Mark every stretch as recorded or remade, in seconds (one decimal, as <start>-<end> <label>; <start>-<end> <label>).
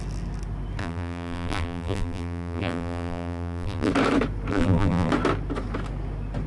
0.0-0.8 recorded; 0.8-3.9 remade; 3.9-4.5 recorded; 4.5-5.1 remade; 5.1-6.5 recorded